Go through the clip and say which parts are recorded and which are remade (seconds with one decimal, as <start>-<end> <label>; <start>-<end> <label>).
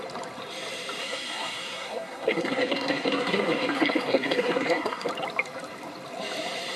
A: 0.0-1.0 recorded; 1.0-5.1 remade; 5.1-6.8 recorded